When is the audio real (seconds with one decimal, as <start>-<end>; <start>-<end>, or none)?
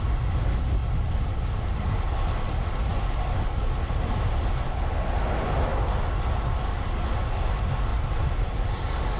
0.0-0.8; 1.7-7.9; 8.7-9.2